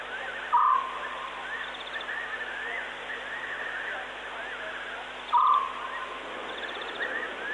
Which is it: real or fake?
real